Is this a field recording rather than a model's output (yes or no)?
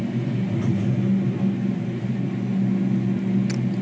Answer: yes